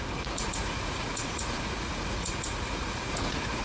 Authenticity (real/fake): fake